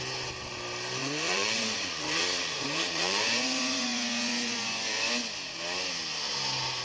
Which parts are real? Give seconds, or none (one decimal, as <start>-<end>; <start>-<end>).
0.0-1.0; 5.1-6.8